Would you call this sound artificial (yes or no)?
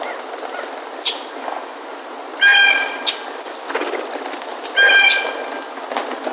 no